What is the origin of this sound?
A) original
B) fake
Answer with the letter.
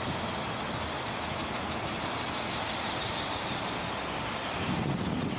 A